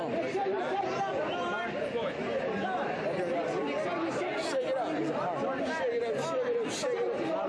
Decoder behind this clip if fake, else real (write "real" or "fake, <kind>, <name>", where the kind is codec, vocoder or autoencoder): real